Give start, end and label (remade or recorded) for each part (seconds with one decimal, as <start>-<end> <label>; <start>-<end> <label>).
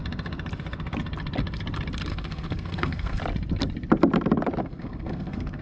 0.0-2.1 recorded; 2.1-3.2 remade; 3.2-4.6 recorded; 4.6-5.6 remade